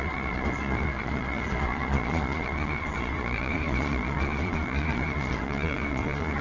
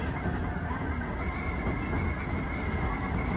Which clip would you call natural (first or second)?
second